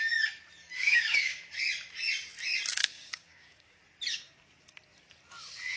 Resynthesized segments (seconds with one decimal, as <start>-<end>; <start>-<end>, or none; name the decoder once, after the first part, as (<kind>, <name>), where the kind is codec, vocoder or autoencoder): 0.9-1.5 (codec, DAC); 2.7-3.8